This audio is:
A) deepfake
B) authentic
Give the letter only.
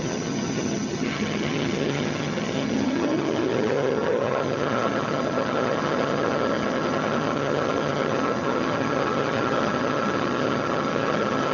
A